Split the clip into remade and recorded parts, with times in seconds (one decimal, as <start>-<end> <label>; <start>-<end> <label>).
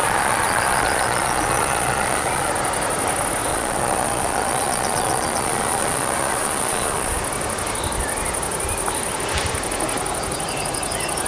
0.0-2.5 remade; 2.5-3.5 recorded; 3.5-7.2 remade; 7.2-11.3 recorded